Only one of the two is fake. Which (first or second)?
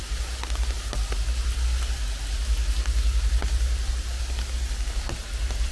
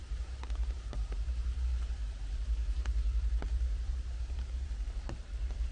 second